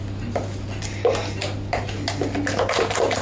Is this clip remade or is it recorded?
recorded